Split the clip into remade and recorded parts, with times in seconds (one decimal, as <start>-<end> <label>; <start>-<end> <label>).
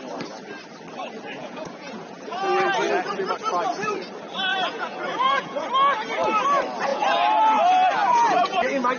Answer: 0.0-1.4 recorded; 1.4-2.4 remade; 2.4-4.5 recorded; 4.5-5.7 remade; 5.7-6.9 recorded; 6.9-7.4 remade; 7.4-8.0 recorded; 8.0-9.0 remade